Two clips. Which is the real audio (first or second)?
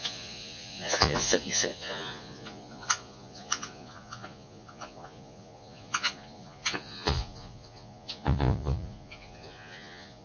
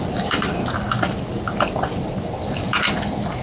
second